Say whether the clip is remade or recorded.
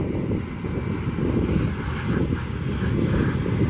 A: recorded